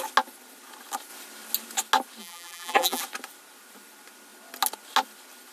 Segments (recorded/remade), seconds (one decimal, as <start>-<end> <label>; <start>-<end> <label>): 0.0-2.2 recorded; 2.2-3.0 remade; 3.0-5.5 recorded